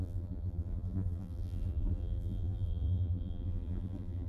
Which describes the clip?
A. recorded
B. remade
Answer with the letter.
B